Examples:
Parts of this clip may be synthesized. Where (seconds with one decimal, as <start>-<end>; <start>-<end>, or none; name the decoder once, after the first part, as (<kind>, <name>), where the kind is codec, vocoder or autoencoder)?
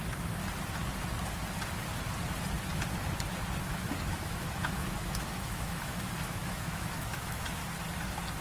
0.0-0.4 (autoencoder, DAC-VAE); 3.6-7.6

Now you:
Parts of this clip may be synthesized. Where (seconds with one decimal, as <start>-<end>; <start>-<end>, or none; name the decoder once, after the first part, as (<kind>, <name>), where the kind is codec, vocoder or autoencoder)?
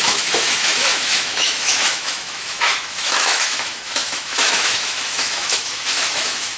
0.0-6.6 (autoencoder, DAC-VAE)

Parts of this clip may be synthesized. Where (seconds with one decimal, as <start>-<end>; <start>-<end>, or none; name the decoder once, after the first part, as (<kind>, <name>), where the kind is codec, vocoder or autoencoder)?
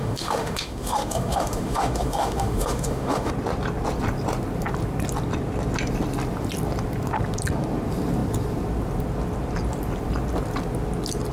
0.0-3.3 (autoencoder, DAC-VAE)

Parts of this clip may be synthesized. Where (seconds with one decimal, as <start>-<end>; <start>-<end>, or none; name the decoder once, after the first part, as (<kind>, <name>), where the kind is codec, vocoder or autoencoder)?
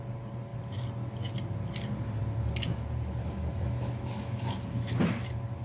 3.2-5.1 (autoencoder, DAC-VAE)